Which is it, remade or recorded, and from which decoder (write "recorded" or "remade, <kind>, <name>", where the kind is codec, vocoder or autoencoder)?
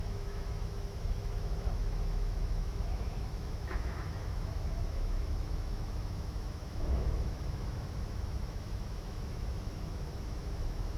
remade, autoencoder, DAC-VAE